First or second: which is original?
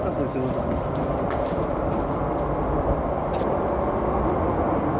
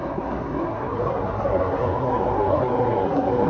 first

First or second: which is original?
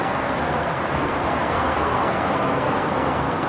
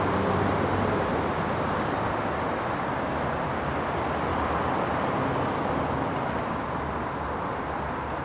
second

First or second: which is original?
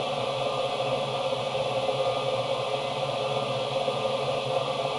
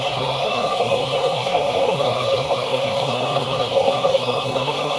first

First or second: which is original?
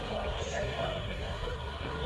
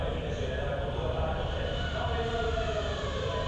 second